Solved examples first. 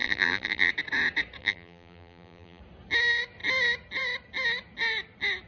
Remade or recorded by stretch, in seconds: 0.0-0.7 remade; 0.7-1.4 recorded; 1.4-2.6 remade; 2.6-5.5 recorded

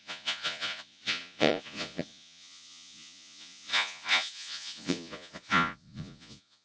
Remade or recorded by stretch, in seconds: 0.0-6.6 remade

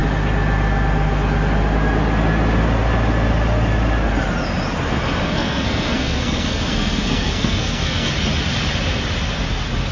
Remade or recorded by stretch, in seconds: 0.0-5.2 recorded; 5.2-8.1 remade; 8.1-9.9 recorded

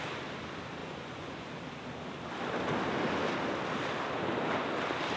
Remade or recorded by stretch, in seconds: 0.0-0.8 recorded; 0.8-1.5 remade; 1.5-5.2 recorded

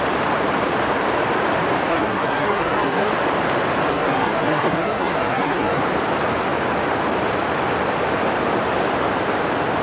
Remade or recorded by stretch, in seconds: 0.0-1.9 recorded; 1.9-3.1 remade; 3.1-3.9 recorded; 3.9-5.8 remade; 5.8-9.8 recorded

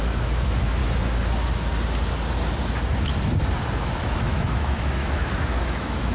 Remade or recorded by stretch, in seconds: 0.0-0.8 remade; 0.8-3.8 recorded; 3.8-6.1 remade

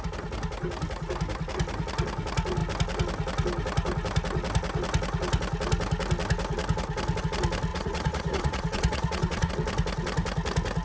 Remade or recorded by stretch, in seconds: 0.0-7.7 recorded; 7.7-9.5 remade; 9.5-10.8 recorded

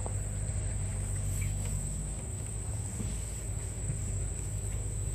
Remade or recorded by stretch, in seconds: 0.0-0.5 recorded; 0.5-5.1 remade